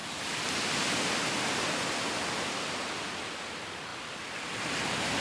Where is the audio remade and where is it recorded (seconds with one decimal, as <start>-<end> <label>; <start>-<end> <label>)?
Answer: 0.0-3.1 remade; 3.1-5.2 recorded